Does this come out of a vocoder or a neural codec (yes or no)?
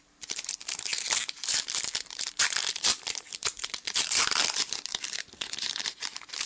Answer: no